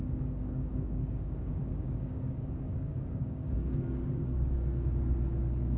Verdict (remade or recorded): remade